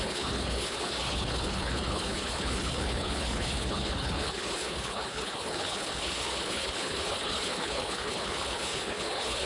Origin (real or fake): fake